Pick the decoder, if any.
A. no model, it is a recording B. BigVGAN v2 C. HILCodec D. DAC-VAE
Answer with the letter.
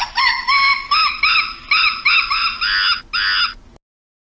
A